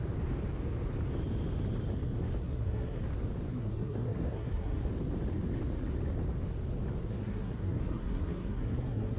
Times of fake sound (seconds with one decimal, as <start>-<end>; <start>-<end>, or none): 2.4-3.0; 3.5-4.9; 7.0-9.2

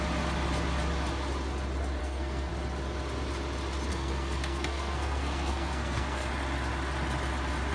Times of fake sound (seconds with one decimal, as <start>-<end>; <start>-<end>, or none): 2.0-2.5; 3.9-6.3

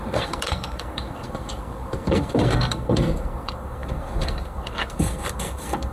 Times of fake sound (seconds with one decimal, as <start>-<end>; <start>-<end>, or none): 0.0-5.9

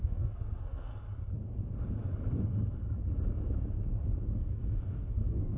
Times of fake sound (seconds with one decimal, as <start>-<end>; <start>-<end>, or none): 0.0-0.9; 4.3-5.6

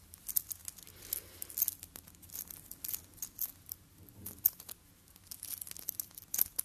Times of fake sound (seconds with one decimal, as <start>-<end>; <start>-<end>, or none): none

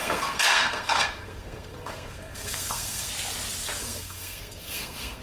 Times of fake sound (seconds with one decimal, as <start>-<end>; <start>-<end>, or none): 0.0-3.1; 3.8-5.2

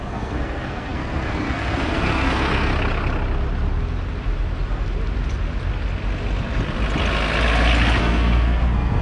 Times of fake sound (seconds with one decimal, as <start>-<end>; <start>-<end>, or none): 0.0-2.7; 8.0-9.0

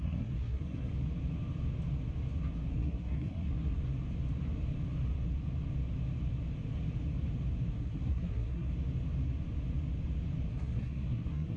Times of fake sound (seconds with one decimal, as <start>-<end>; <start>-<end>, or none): 0.0-0.9; 2.7-3.8; 7.7-8.7; 10.5-11.6